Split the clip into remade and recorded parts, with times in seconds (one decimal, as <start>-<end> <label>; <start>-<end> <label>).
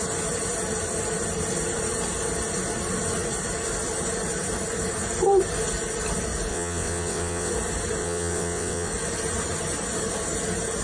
0.0-6.5 recorded; 6.5-7.5 remade; 7.5-8.0 recorded; 8.0-8.9 remade; 8.9-10.8 recorded